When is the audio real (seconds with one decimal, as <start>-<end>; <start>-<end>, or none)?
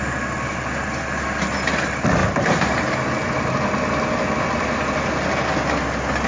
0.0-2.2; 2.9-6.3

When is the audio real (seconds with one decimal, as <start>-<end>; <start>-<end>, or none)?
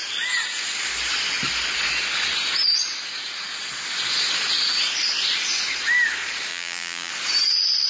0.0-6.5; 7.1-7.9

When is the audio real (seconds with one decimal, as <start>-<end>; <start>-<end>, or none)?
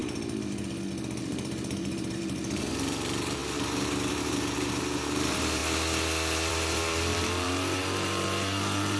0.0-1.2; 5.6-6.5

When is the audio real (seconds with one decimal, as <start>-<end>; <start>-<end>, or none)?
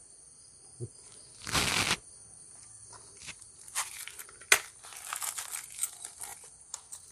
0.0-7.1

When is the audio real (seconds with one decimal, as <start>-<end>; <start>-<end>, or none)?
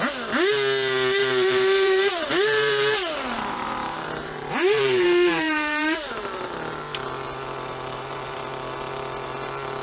0.0-1.2; 6.1-7.9; 8.5-9.8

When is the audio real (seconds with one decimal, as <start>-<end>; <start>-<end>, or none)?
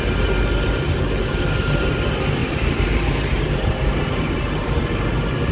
0.0-1.2; 1.9-2.4; 4.9-5.5